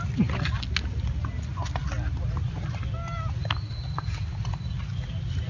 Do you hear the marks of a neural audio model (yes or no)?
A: no